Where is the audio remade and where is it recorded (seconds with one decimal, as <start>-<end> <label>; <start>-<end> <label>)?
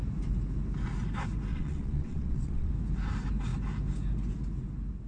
0.0-1.5 recorded; 1.5-2.7 remade; 2.7-5.1 recorded